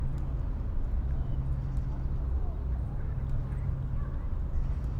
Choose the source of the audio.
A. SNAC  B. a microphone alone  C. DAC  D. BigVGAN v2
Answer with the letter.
B